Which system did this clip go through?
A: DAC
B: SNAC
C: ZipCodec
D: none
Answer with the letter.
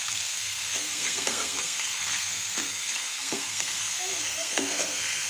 B